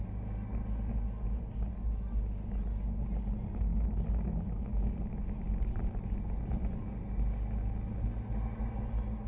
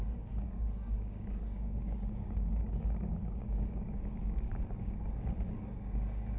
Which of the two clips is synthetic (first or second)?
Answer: second